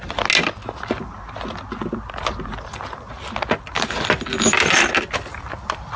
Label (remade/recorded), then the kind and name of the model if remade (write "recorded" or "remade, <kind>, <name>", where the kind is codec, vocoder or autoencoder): recorded